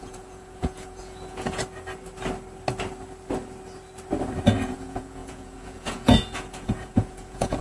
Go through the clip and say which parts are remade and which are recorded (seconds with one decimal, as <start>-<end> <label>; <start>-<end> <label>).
0.0-1.6 remade; 1.6-4.4 recorded; 4.4-7.6 remade